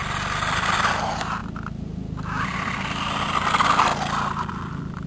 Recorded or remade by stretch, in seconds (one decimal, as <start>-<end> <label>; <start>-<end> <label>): 0.0-5.1 recorded